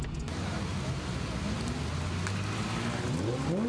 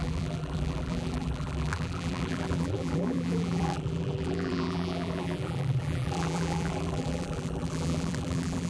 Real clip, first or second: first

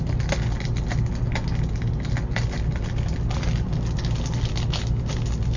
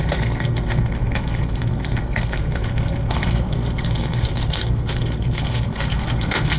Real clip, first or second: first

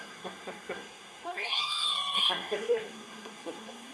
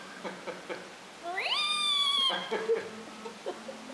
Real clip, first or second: second